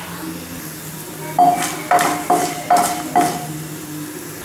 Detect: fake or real real